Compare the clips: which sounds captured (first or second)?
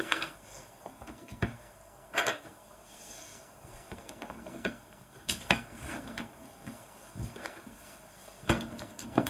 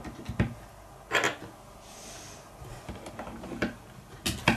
second